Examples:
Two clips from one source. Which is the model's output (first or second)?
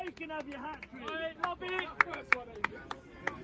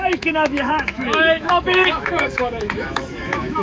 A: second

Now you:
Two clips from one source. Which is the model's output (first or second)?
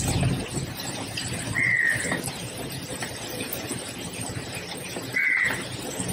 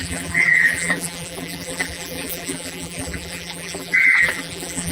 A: second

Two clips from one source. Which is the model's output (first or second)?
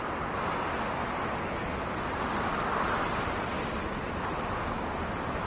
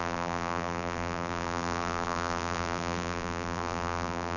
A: second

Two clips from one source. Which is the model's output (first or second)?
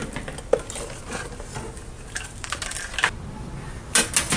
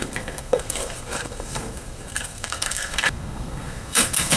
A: second